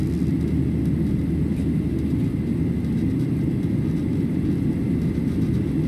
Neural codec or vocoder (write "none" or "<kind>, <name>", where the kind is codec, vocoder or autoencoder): none